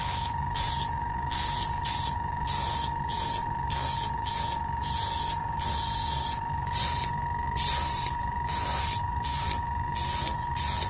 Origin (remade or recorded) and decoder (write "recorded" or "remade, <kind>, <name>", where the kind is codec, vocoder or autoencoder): remade, vocoder, BigVGAN v2